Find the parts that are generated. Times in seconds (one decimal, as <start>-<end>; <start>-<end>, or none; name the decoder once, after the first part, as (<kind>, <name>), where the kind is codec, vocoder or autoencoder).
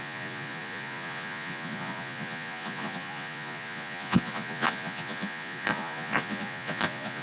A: 0.0-7.2 (vocoder, Vocos)